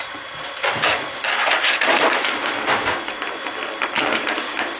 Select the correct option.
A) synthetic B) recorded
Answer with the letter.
B